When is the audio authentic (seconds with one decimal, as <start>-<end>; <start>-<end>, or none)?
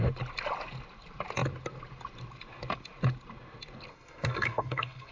0.0-3.9